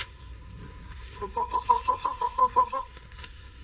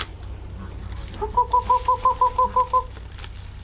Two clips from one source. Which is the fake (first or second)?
first